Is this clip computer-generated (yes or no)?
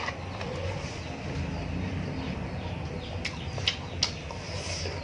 no